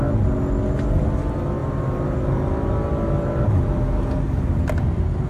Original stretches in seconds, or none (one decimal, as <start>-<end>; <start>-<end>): 0.0-5.3